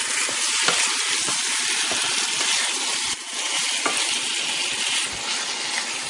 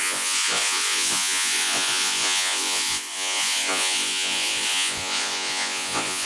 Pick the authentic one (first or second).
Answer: first